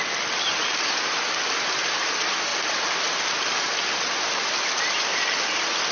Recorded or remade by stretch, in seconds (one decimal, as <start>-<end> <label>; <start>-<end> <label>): 0.0-5.9 recorded